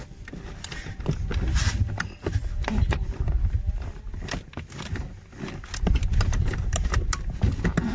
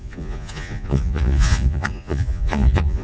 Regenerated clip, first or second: second